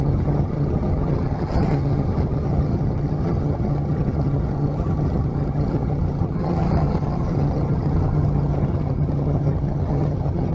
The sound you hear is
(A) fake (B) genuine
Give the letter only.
A